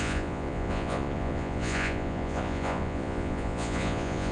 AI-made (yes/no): yes